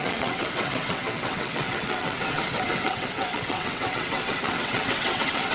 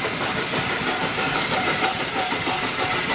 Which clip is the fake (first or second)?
first